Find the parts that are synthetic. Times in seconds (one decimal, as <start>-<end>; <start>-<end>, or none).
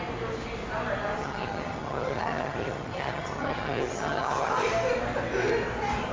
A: 1.2-4.5